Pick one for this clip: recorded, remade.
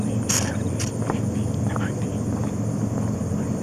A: recorded